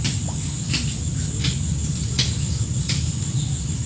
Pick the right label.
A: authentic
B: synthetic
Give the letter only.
A